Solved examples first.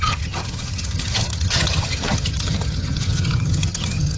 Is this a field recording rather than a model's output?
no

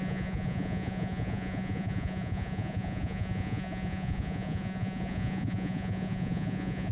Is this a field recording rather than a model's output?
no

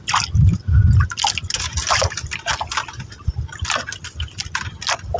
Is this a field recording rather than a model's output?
yes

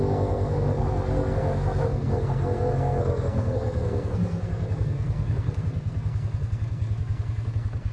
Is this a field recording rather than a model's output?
no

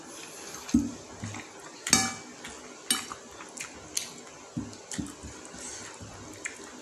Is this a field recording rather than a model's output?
yes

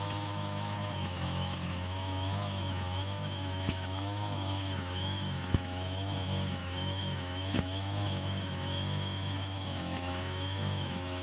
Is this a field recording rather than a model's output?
no